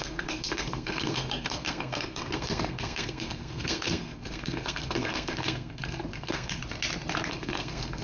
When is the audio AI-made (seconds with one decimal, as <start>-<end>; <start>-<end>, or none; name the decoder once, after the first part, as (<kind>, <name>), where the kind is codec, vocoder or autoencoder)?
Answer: 0.0-6.6 (codec, SNAC); 7.3-8.0

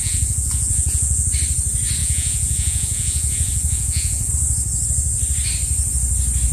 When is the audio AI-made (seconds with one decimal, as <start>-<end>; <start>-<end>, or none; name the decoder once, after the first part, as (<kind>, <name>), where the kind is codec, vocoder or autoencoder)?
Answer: 0.0-1.3 (vocoder, Vocos); 2.0-4.3